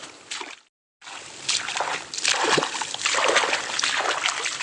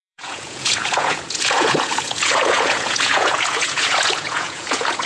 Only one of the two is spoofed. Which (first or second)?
second